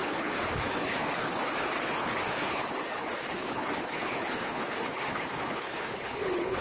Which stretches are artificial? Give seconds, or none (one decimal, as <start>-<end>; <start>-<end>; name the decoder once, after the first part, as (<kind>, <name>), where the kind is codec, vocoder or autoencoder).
0.0-6.6 (codec, HILCodec)